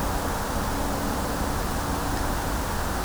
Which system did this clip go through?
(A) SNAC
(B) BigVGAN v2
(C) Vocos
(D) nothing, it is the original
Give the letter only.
D